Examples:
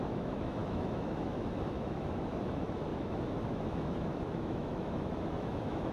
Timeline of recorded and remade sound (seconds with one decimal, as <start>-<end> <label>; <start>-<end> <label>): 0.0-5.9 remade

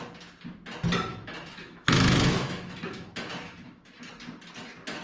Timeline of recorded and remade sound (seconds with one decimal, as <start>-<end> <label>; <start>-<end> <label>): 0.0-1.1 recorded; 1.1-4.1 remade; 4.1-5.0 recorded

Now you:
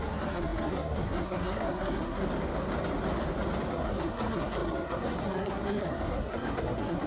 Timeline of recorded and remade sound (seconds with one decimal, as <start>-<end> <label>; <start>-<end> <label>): 0.0-2.2 remade; 2.2-3.7 recorded; 3.7-7.1 remade